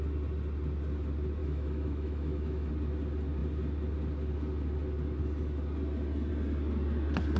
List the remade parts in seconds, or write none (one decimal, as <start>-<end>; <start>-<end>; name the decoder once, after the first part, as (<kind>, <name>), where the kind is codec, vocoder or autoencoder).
1.4-2.7 (autoencoder, DAC-VAE)